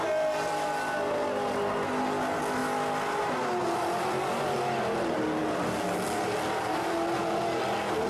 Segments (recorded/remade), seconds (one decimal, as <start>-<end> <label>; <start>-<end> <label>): 0.0-8.1 recorded